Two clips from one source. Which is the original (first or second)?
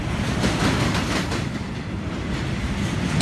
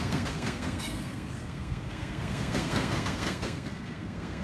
first